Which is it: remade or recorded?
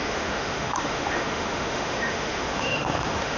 remade